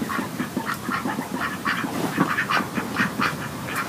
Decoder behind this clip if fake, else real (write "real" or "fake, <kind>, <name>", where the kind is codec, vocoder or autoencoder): fake, vocoder, BigVGAN v2